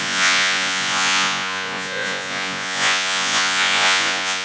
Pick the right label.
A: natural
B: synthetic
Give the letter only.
B